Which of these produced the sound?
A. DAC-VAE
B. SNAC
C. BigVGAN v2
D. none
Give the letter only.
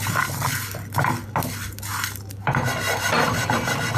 D